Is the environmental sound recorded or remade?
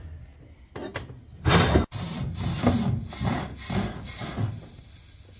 recorded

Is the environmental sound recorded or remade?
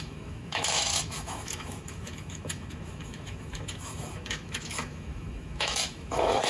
remade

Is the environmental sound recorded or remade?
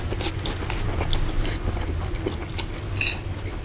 recorded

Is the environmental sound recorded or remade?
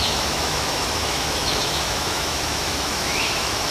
remade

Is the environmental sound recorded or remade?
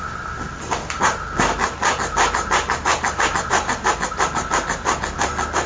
recorded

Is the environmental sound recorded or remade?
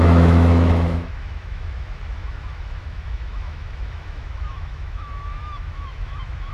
remade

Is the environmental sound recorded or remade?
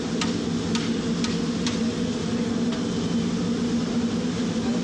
recorded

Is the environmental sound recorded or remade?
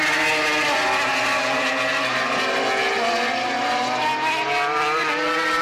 recorded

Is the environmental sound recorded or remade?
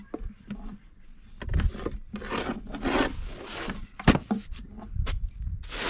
recorded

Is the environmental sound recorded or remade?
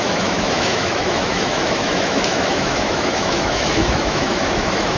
remade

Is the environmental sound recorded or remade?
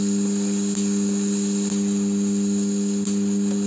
recorded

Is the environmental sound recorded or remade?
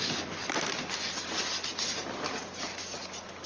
recorded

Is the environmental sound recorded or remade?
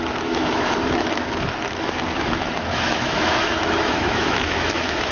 remade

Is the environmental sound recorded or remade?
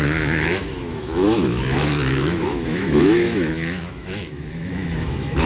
remade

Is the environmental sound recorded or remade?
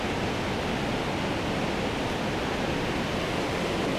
recorded